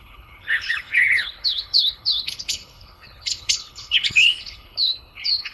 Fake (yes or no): yes